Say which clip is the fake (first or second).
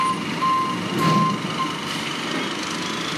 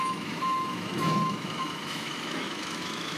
second